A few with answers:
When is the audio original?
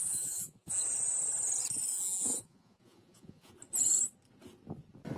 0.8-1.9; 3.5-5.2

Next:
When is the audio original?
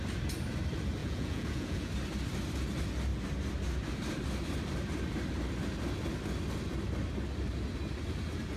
0.0-1.0; 1.9-8.6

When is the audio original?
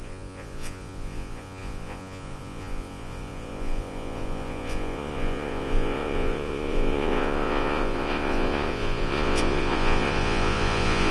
none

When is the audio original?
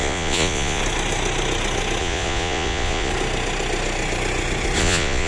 0.8-2.0; 3.1-4.8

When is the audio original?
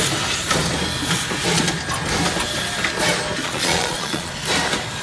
0.0-3.4; 4.3-5.0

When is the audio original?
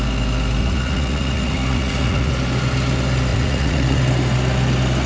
0.0-0.6; 2.3-3.3; 4.0-5.1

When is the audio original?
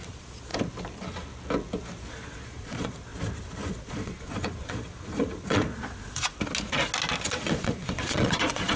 0.5-2.1; 3.1-3.7; 6.3-7.3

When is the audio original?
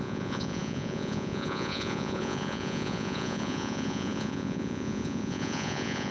none